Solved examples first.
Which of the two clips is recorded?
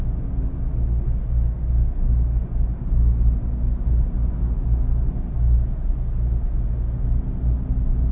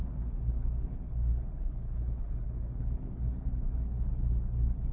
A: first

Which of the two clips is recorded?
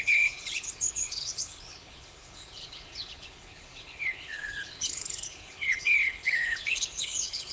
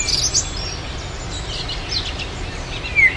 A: second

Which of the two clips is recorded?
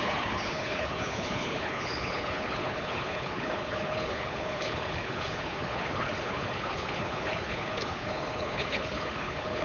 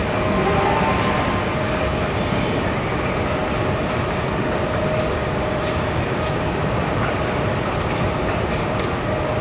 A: second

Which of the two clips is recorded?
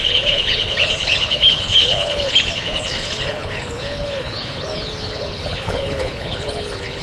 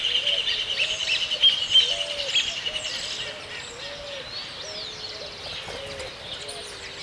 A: second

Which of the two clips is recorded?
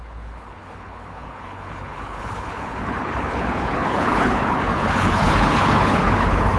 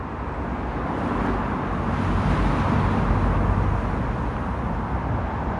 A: second